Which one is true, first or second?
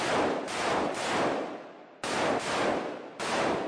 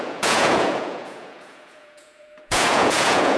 first